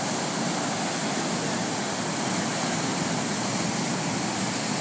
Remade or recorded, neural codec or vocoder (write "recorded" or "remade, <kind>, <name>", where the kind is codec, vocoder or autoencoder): recorded